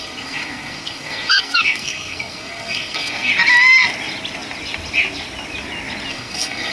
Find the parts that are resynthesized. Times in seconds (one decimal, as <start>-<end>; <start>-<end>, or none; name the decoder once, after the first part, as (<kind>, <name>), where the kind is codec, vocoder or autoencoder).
0.0-3.3 (codec, SNAC); 6.1-6.7